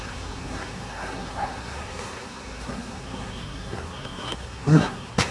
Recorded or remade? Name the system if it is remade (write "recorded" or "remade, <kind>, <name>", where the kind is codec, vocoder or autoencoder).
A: remade, codec, SNAC